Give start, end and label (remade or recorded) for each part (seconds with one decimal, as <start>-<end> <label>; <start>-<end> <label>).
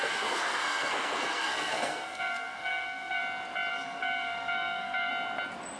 0.0-3.2 remade; 3.2-3.7 recorded; 3.7-5.1 remade; 5.1-5.8 recorded